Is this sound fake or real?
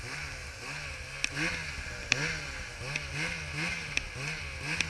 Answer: real